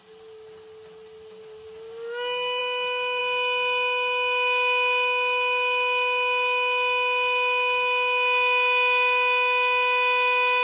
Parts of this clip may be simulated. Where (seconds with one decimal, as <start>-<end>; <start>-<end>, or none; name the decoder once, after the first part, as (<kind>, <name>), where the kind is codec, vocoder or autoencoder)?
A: none